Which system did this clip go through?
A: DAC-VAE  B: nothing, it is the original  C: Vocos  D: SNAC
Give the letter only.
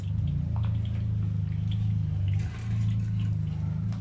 B